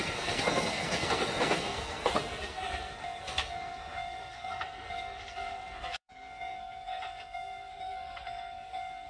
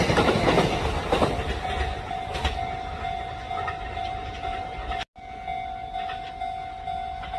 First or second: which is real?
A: second